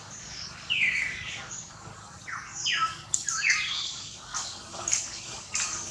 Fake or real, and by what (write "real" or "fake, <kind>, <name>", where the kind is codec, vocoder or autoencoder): fake, codec, DAC